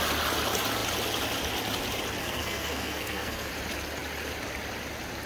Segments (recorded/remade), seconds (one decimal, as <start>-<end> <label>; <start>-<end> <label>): 0.0-2.2 recorded; 2.2-3.5 remade; 3.5-5.3 recorded